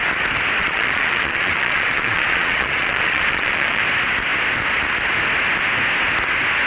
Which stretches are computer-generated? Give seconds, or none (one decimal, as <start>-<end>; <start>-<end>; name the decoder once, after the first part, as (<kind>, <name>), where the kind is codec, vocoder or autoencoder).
0.6-3.8 (vocoder, Vocos)